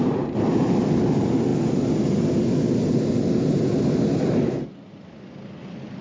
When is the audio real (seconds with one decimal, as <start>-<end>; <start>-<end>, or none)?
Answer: 0.0-6.0